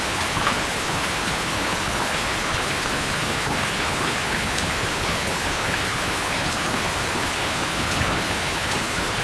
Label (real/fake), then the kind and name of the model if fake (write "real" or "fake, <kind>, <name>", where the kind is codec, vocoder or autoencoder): fake, codec, HILCodec